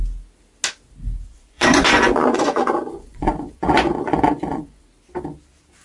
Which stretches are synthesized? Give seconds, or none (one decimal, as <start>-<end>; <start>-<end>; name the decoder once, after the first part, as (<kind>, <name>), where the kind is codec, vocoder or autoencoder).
1.3-4.8 (vocoder, Vocos)